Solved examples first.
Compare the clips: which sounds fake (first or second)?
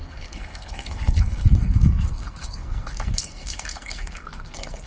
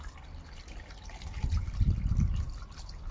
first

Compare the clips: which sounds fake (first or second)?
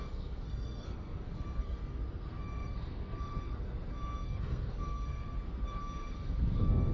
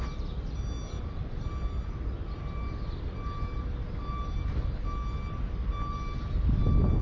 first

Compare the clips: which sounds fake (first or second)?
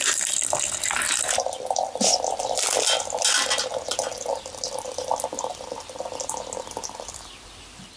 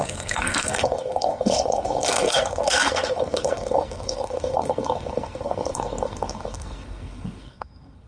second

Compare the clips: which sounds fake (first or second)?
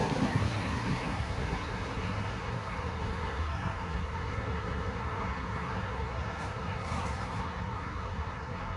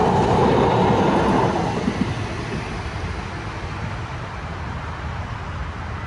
first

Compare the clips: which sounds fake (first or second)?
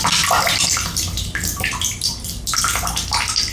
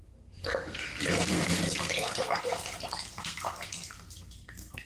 second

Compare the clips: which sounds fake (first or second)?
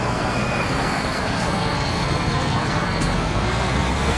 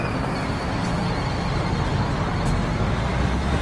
first